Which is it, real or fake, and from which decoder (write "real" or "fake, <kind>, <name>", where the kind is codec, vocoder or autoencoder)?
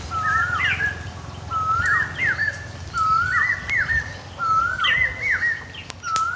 real